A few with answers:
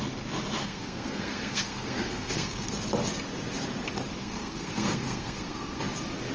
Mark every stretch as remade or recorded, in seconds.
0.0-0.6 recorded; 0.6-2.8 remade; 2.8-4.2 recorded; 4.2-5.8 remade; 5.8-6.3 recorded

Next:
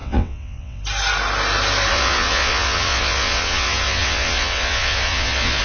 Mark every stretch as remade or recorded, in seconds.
0.0-0.8 remade; 0.8-1.9 recorded; 1.9-5.6 remade

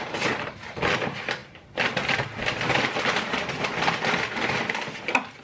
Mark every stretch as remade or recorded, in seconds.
0.0-5.4 recorded

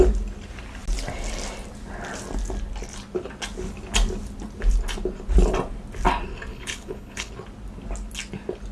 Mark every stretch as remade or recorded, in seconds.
0.0-6.5 recorded; 6.5-7.3 remade; 7.3-8.7 recorded

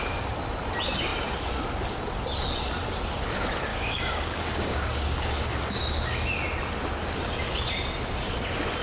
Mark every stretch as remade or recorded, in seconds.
0.0-3.7 recorded; 3.7-5.8 remade; 5.8-8.8 recorded

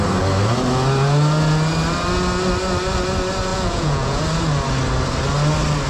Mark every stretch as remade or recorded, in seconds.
0.0-3.5 recorded; 3.5-4.2 remade; 4.2-5.9 recorded